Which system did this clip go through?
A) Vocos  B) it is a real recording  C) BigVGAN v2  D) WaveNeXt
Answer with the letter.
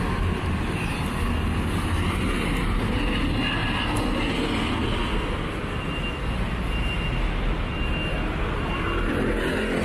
B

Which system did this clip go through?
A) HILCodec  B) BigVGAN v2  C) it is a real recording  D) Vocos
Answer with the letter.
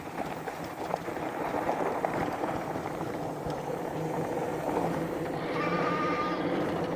B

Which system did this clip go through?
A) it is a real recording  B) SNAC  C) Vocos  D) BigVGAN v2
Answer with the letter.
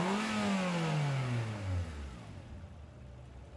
A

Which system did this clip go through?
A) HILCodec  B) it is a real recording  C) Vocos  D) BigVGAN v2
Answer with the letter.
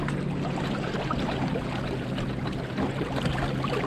B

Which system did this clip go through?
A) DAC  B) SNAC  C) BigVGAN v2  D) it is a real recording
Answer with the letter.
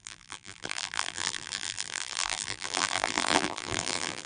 C